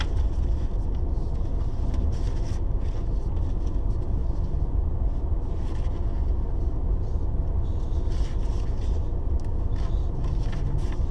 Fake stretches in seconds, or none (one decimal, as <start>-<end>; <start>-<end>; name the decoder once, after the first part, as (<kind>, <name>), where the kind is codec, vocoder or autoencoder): none